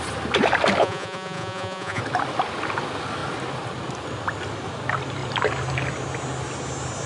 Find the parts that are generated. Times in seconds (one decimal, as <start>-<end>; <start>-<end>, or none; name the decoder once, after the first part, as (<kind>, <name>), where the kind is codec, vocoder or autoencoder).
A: 0.8-2.0 (vocoder, Vocos)